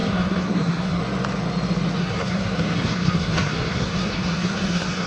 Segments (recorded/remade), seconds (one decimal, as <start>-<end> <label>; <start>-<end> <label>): 0.0-1.0 remade; 1.0-2.0 recorded; 2.0-5.1 remade